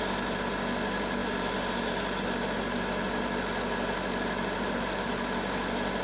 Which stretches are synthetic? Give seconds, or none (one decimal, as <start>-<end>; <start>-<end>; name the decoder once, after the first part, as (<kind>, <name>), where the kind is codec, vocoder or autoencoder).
none